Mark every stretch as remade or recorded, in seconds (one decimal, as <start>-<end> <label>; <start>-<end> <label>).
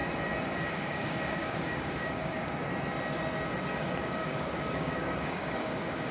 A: 0.0-0.7 recorded; 0.7-2.6 remade; 2.6-4.0 recorded; 4.0-6.1 remade